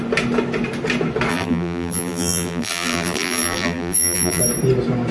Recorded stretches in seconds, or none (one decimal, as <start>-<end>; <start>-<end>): 0.0-1.3; 4.4-5.1